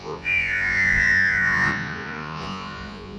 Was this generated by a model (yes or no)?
yes